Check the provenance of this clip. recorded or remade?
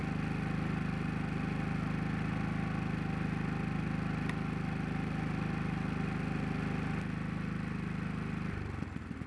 recorded